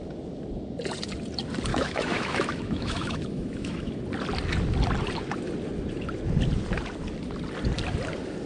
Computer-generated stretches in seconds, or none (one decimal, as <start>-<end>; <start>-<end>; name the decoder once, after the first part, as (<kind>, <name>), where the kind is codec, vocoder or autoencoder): 1.7-4.0 (autoencoder, DAC-VAE)

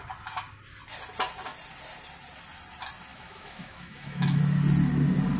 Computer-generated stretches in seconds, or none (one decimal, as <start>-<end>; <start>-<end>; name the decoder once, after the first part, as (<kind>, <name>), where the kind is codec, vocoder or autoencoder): 3.1-4.4 (autoencoder, DAC-VAE)

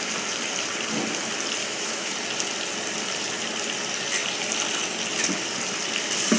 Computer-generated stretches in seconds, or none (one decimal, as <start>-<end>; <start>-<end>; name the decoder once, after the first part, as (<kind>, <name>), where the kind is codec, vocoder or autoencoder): 1.6-2.1 (autoencoder, DAC-VAE)